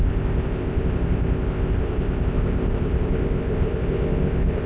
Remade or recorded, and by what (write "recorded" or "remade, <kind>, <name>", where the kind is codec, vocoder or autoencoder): remade, codec, ZipCodec